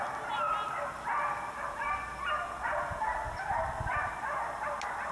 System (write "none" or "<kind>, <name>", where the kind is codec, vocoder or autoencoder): none